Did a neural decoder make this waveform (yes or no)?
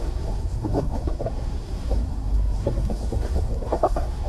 yes